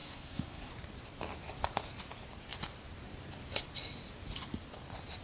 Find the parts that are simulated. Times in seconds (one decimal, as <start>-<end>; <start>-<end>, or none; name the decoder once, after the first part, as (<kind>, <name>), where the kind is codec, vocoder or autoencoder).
0.0-0.7 (codec, SNAC)